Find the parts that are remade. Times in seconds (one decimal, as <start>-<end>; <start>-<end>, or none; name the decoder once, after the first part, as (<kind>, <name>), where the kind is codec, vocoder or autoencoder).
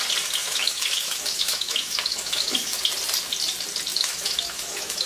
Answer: 0.4-2.8 (autoencoder, DAC-VAE); 3.9-5.1